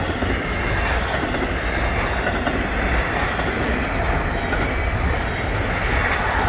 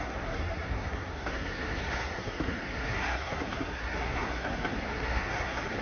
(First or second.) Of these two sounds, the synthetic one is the second